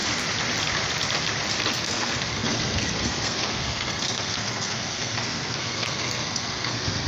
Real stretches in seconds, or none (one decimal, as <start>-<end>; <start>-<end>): 0.0-1.7